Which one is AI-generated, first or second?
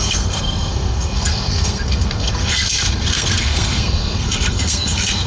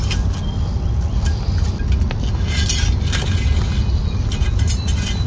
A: first